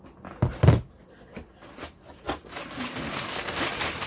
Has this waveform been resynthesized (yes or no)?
no